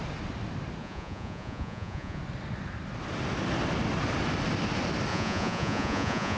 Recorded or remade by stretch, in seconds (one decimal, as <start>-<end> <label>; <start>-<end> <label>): 0.0-0.8 recorded; 0.8-2.2 remade; 2.2-5.1 recorded; 5.1-6.4 remade